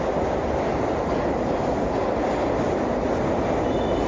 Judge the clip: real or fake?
real